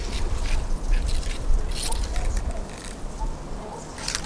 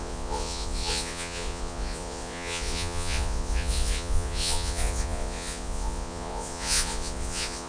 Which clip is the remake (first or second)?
second